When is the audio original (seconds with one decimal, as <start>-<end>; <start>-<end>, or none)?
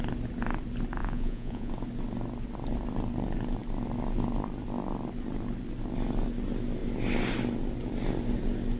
0.0-1.0; 1.7-8.8